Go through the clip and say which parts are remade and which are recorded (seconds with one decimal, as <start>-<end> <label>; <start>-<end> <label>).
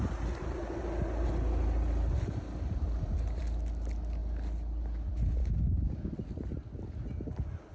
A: 0.0-5.4 recorded; 5.4-6.1 remade; 6.1-7.7 recorded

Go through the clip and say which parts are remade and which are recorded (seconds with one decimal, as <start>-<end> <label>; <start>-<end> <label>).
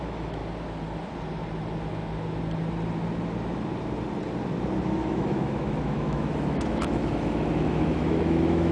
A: 0.0-0.4 remade; 0.4-4.8 recorded; 4.8-8.7 remade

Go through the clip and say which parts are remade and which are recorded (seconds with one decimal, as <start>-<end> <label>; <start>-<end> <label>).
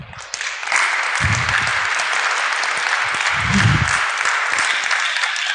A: 0.0-5.5 recorded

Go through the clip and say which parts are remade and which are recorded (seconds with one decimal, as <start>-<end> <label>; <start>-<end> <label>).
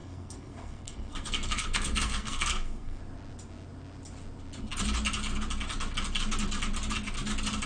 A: 0.0-3.0 remade; 3.0-7.7 recorded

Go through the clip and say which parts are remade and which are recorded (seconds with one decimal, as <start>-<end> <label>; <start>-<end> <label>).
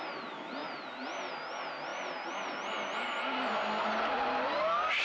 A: 0.0-5.0 recorded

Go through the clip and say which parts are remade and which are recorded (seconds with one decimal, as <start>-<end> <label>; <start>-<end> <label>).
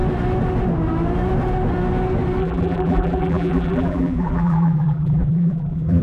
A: 0.0-2.4 recorded; 2.4-6.0 remade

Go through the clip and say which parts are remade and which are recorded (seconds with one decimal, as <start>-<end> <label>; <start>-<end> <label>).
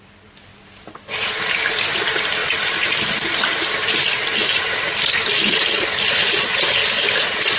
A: 0.0-2.4 recorded; 2.4-4.1 remade; 4.1-6.8 recorded; 6.8-7.6 remade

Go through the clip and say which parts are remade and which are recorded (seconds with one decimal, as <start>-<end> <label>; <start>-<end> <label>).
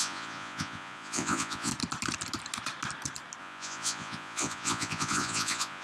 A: 0.0-1.7 remade; 1.7-3.4 recorded; 3.4-5.8 remade